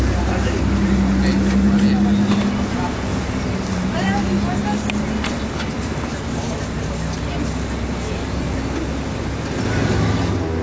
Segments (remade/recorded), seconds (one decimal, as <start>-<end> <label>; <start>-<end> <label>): 0.0-3.1 recorded; 3.1-4.2 remade; 4.2-10.6 recorded